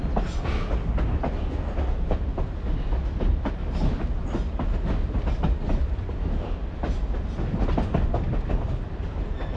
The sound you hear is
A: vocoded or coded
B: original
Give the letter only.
B